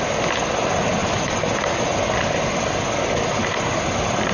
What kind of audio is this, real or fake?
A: real